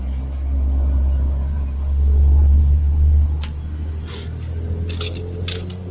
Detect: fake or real real